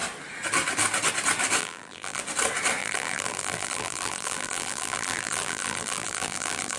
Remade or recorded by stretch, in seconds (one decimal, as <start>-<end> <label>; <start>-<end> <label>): 0.0-1.6 recorded; 1.6-2.2 remade; 2.2-2.8 recorded; 2.8-6.8 remade